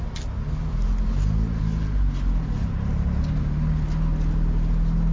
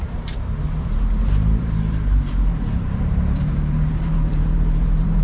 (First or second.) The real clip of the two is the first